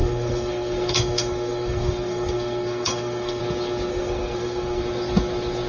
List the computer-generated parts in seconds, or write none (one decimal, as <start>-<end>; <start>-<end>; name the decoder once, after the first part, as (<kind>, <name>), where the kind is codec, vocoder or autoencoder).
0.0-3.4 (codec, SNAC); 3.9-4.8